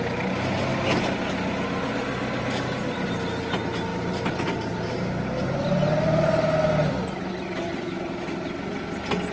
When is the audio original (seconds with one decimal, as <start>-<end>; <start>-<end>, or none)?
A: 0.0-9.3